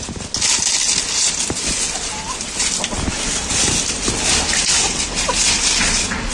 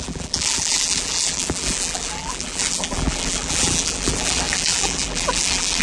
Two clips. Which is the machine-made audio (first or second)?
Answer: second